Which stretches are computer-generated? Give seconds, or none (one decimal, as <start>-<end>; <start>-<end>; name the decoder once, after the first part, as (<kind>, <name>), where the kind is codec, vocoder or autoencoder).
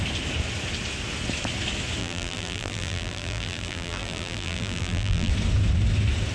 2.0-5.3 (vocoder, BigVGAN v2)